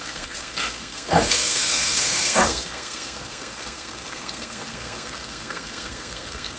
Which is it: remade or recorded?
remade